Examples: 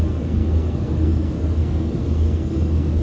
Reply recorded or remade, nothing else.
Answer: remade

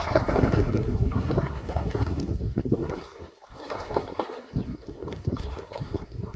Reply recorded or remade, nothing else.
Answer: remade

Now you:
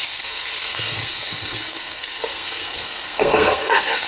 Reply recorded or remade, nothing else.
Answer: remade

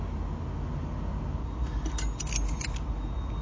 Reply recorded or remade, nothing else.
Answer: recorded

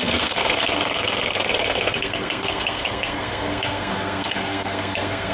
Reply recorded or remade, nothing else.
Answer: remade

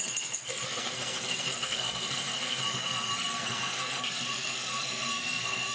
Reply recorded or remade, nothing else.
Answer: remade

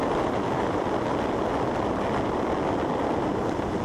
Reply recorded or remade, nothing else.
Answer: recorded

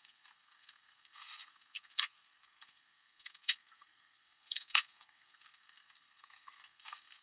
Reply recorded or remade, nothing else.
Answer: remade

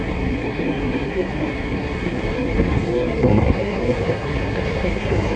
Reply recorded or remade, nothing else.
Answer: remade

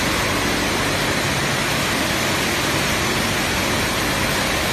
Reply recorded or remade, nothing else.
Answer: recorded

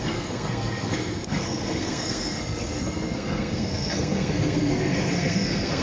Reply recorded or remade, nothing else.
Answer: remade